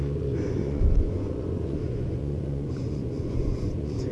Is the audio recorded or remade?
remade